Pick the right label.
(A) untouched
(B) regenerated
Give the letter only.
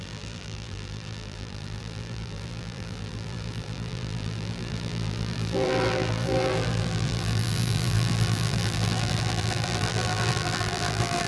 B